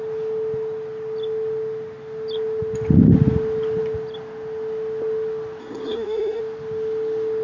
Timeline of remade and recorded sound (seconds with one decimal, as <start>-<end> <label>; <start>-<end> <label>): 0.0-5.6 recorded; 5.6-6.4 remade; 6.4-7.4 recorded